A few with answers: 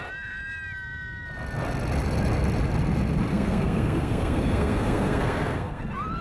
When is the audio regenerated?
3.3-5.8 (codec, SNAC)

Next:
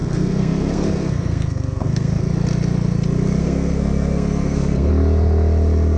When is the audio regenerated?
0.0-2.2 (codec, SNAC); 3.4-4.9

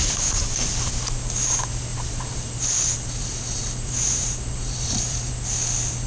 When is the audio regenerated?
0.0-0.6 (vocoder, BigVGAN v2); 1.9-5.4

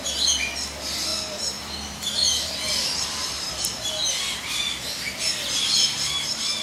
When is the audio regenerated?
1.1-4.1 (vocoder, BigVGAN v2)

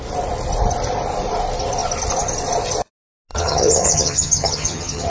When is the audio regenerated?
3.3-5.1 (vocoder, HiFi-GAN)